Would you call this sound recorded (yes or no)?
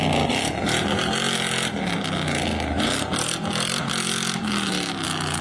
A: yes